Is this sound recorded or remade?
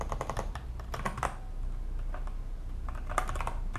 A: recorded